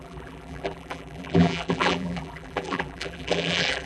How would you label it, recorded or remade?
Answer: remade